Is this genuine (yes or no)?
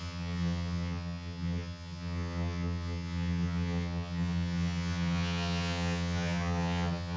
no